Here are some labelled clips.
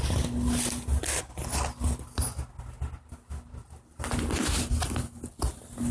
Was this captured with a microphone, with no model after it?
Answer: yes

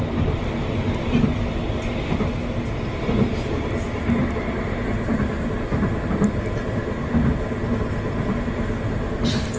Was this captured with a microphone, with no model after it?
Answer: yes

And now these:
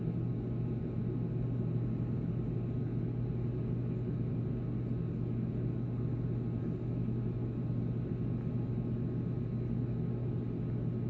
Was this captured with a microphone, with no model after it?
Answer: yes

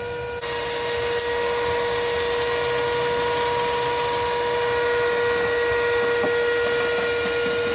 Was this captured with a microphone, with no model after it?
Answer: yes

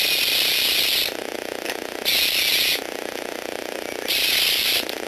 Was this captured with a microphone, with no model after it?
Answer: yes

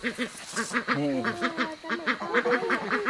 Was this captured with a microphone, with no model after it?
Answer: yes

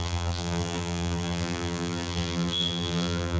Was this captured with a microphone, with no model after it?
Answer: no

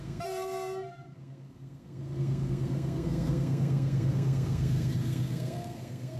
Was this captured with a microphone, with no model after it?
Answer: no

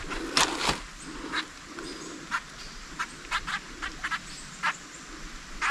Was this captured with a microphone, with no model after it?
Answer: yes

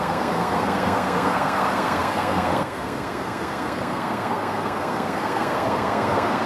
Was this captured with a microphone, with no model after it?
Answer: no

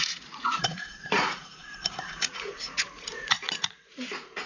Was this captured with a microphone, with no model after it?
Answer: no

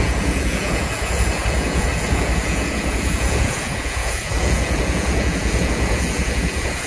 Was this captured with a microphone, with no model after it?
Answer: no